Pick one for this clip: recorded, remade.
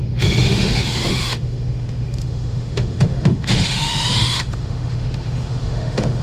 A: remade